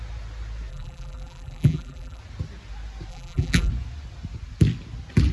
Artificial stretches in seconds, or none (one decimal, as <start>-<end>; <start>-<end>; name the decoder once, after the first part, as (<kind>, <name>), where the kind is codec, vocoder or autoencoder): 0.7-2.2 (vocoder, BigVGAN v2); 3.1-3.7